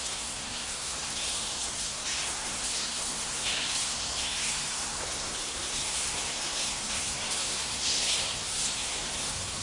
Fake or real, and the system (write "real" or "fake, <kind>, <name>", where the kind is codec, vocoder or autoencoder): fake, codec, SNAC